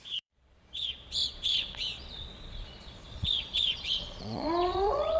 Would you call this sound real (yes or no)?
no